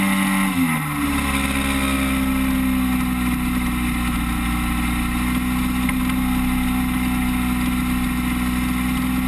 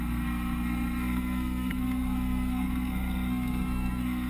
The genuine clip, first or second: first